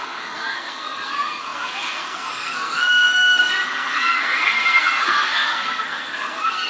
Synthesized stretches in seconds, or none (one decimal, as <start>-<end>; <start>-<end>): 0.0-6.7